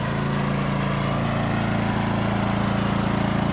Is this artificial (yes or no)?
no